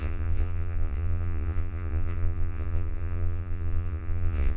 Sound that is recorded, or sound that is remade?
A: remade